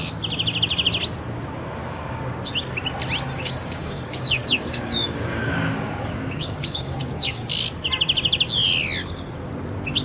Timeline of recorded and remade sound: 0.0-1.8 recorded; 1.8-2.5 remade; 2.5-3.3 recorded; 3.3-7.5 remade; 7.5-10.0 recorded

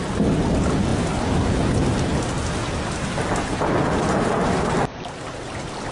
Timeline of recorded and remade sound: 0.0-5.9 recorded

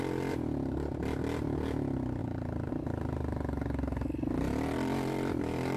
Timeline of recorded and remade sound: 0.0-2.2 recorded; 2.2-2.7 remade; 2.7-5.8 recorded

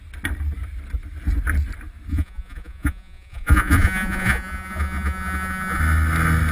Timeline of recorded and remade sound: 0.0-2.1 recorded; 2.1-5.8 remade; 5.8-6.5 recorded

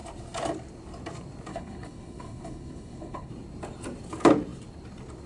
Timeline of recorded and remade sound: 0.0-1.5 recorded; 1.5-3.3 remade; 3.3-5.3 recorded

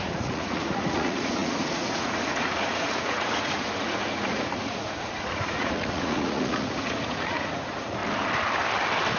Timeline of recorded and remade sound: 0.0-8.0 remade; 8.0-9.2 recorded